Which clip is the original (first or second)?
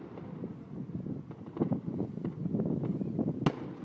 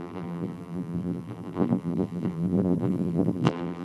first